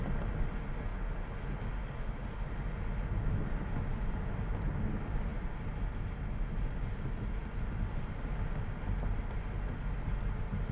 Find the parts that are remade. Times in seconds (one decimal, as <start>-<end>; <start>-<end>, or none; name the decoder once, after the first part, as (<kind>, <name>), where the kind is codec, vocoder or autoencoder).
none